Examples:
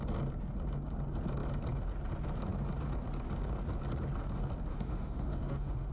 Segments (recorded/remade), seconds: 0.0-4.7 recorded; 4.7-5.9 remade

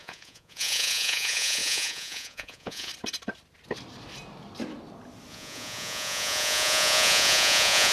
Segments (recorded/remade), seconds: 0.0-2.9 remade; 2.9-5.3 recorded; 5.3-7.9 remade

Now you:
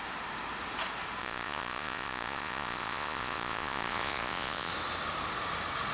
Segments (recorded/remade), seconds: 0.0-1.2 recorded; 1.2-4.7 remade; 4.7-5.9 recorded

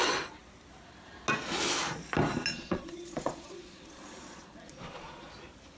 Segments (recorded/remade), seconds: 0.0-2.5 recorded; 2.5-5.3 remade; 5.3-5.8 recorded

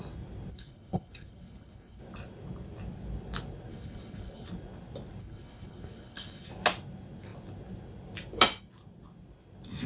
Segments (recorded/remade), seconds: 0.0-0.5 recorded; 0.5-2.0 remade; 2.0-3.7 recorded; 3.7-4.5 remade; 4.5-5.2 recorded; 5.2-6.5 remade; 6.5-9.9 recorded